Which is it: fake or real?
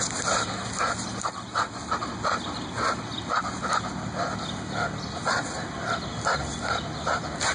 real